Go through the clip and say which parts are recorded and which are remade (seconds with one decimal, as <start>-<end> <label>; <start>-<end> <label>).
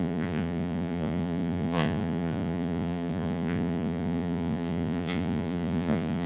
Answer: 0.0-6.3 remade